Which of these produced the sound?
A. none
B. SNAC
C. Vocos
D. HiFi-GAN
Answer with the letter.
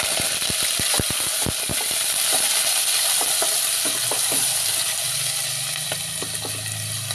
A